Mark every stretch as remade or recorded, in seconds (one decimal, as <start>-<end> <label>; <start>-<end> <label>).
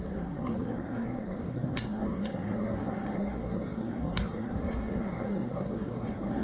0.0-6.4 remade